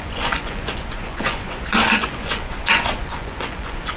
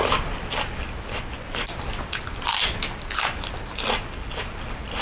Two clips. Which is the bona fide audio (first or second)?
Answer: second